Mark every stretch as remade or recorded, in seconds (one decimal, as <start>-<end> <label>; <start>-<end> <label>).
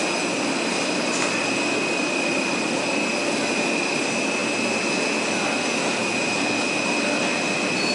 0.0-7.9 recorded